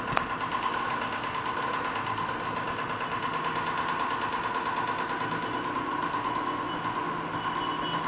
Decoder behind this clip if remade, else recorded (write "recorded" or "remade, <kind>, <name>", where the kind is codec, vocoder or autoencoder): recorded